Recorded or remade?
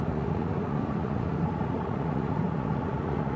remade